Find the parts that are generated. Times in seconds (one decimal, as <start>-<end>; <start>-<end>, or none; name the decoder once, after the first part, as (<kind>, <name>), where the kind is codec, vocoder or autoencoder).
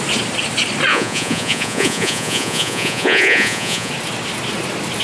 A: 0.9-3.9 (vocoder, Vocos)